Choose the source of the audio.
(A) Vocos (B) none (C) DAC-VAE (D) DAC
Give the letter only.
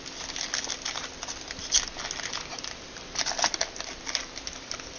B